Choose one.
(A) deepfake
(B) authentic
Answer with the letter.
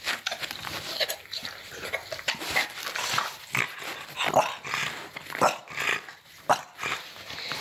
B